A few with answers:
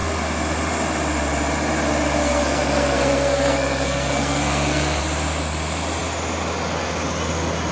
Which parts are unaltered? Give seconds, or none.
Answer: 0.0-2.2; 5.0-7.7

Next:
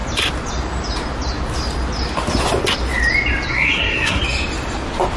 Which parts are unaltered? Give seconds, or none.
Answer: 0.0-3.5; 4.2-5.2

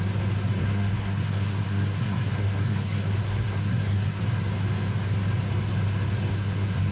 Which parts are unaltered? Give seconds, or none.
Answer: 0.0-0.6; 4.2-6.3

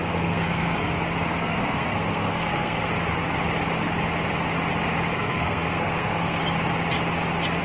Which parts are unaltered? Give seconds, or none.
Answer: 0.9-1.4; 2.9-5.1; 6.4-7.6

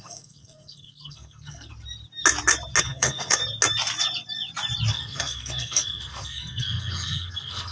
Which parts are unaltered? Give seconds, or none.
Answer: 1.7-2.8; 3.4-4.9

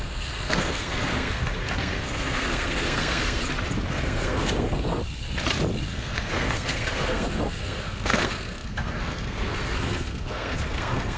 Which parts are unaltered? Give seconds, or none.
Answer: 3.4-3.9; 5.0-5.9

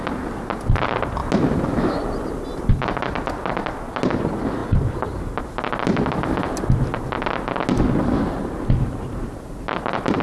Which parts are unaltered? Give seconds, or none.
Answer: 0.0-10.2

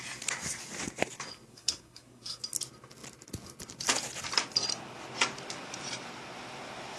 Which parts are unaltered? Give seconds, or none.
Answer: 0.0-1.5; 2.4-7.0